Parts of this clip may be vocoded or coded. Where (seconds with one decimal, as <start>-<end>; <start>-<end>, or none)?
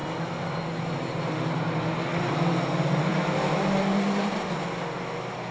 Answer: none